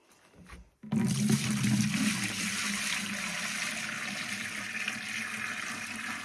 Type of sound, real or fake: real